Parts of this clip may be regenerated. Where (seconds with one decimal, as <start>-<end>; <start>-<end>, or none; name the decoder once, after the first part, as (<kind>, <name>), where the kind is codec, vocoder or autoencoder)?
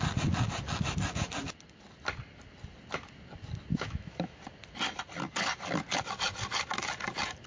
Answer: 3.7-4.4 (autoencoder, DAC-VAE)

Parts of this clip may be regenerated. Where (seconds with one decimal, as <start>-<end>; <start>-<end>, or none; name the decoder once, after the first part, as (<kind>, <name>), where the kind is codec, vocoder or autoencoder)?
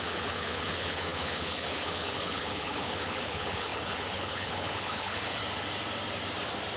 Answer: 0.0-5.4 (codec, HILCodec)